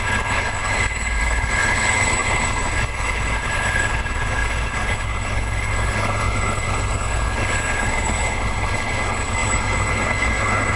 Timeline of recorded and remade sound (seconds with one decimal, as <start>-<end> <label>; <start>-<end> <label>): 0.0-10.8 remade